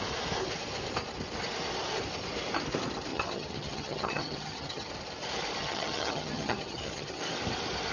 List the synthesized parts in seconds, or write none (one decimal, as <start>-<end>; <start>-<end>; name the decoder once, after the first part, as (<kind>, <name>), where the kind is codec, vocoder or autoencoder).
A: 3.1-4.9 (vocoder, HiFi-GAN); 5.6-7.2